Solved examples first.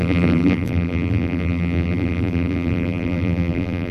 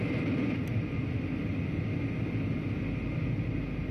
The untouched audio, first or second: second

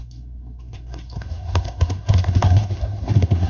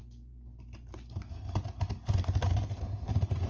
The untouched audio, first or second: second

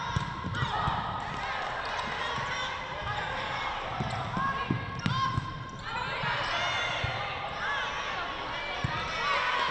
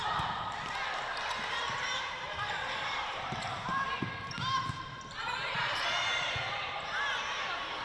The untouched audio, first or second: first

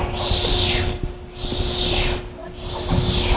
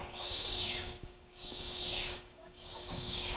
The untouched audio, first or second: first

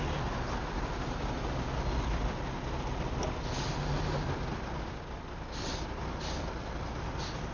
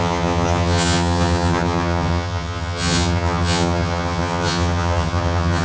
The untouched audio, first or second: first